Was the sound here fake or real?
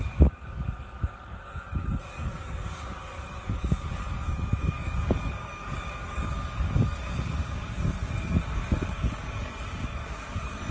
fake